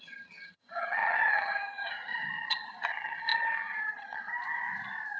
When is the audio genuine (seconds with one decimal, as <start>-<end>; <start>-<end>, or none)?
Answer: 4.3-5.2